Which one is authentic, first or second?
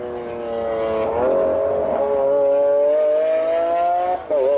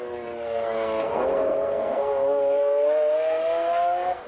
first